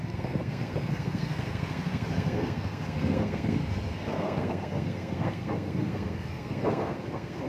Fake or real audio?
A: fake